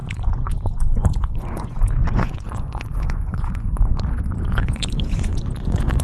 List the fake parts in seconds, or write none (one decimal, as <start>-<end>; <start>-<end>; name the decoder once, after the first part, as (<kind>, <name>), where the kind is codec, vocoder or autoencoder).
0.0-6.0 (vocoder, Vocos)